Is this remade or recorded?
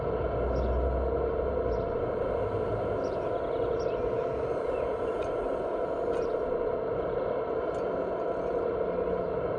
recorded